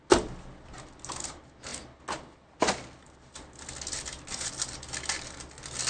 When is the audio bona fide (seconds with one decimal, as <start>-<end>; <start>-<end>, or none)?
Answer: 0.0-5.9